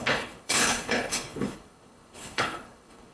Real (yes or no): no